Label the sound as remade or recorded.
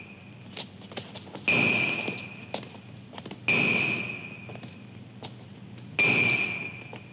recorded